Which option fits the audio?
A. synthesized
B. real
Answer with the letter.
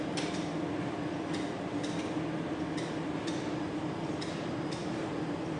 B